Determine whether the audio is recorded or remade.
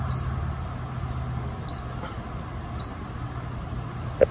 recorded